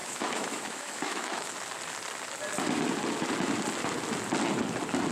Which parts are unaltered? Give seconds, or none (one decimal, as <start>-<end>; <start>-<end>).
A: 1.5-5.1